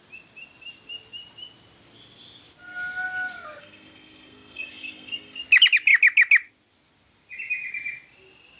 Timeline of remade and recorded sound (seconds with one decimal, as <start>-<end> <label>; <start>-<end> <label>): 0.0-3.6 recorded; 3.6-5.4 remade; 5.4-8.6 recorded